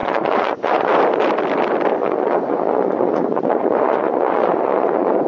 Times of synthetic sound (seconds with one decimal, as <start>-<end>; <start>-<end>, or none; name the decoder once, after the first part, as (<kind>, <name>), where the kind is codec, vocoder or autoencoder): 0.0-0.9 (vocoder, Vocos); 2.0-5.3